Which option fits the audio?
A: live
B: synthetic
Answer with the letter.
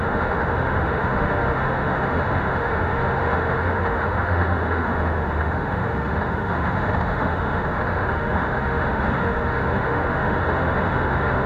B